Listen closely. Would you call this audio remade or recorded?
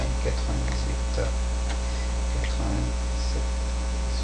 recorded